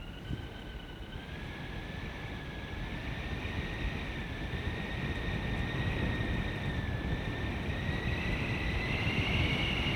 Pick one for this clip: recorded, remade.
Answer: recorded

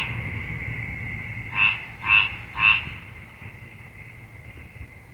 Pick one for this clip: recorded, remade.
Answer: recorded